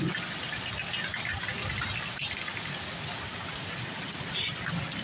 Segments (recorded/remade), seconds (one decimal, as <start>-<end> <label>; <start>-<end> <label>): 0.0-5.0 recorded